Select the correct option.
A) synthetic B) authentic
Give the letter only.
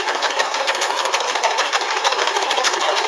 A